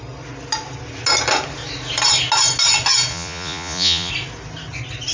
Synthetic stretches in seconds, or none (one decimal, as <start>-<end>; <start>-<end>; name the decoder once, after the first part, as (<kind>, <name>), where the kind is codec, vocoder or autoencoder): 3.1-4.1 (vocoder, Vocos)